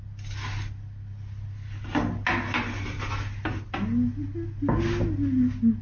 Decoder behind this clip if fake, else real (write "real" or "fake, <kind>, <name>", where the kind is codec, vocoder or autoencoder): real